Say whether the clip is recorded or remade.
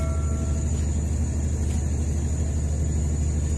recorded